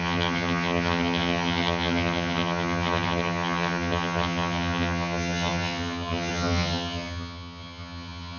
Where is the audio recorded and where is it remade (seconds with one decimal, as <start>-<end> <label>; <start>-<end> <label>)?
0.0-8.4 remade